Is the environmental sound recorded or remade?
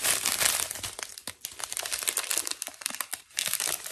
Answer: recorded